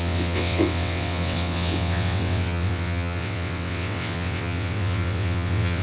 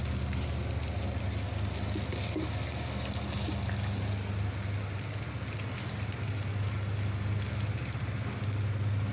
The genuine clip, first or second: second